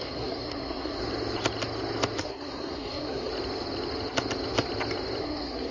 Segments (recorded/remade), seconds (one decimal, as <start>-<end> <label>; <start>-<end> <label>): 0.0-1.0 remade; 1.0-2.2 recorded; 2.2-3.3 remade; 3.3-5.2 recorded; 5.2-5.7 remade